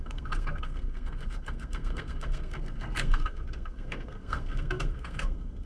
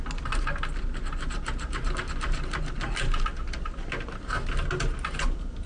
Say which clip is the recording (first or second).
second